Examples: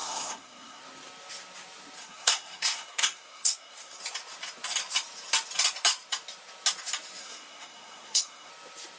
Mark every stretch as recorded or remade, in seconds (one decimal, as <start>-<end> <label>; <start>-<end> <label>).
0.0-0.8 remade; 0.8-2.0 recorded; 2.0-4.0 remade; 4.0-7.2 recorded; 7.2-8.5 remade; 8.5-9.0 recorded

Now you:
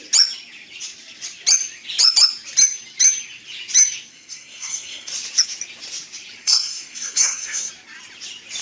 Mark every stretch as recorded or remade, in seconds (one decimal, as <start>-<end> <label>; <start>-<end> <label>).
0.0-4.1 recorded; 4.1-5.1 remade; 5.1-6.4 recorded; 6.4-7.7 remade; 7.7-8.6 recorded

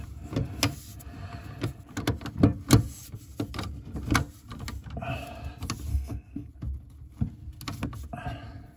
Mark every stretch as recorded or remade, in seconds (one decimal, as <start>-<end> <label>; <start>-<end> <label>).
0.0-5.9 recorded; 5.9-6.5 remade; 6.5-8.8 recorded